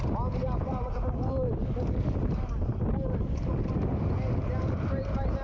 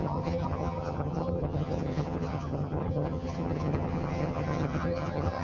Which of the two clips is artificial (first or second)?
second